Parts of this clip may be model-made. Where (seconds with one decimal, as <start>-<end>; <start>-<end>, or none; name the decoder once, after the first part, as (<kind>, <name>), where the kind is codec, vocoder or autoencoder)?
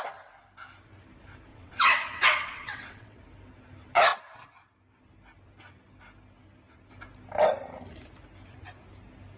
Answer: 1.5-3.2 (vocoder, WaveNeXt)